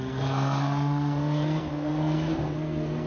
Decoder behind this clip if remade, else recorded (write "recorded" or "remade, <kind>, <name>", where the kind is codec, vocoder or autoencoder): remade, codec, SNAC